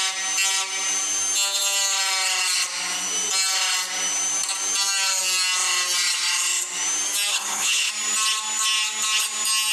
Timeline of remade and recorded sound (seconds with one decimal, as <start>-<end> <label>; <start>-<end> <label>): 0.0-7.3 recorded; 7.3-7.9 remade; 7.9-9.7 recorded